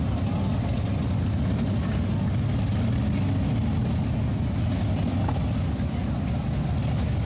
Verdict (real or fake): real